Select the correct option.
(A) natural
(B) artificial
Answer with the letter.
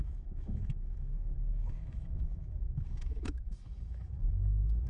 B